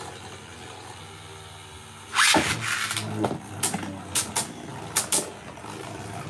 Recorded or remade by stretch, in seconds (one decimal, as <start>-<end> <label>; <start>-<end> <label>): 0.0-6.3 recorded